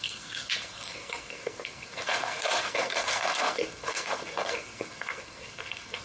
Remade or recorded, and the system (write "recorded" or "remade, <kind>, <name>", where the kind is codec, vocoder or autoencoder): remade, codec, SNAC